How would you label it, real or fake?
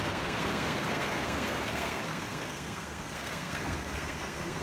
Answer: fake